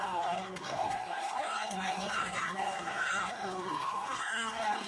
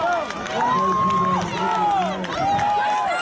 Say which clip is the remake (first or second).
first